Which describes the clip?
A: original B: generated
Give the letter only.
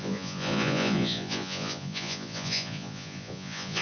B